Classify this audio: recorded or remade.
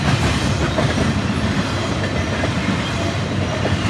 recorded